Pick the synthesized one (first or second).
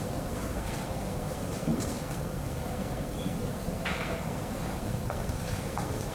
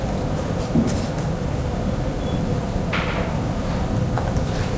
first